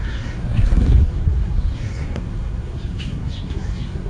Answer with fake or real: fake